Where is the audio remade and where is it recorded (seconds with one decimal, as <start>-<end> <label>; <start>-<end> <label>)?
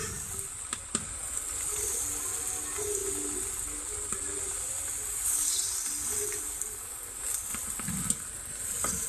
0.0-3.0 recorded; 3.0-6.4 remade; 6.4-9.1 recorded